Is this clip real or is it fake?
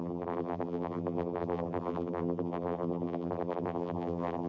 fake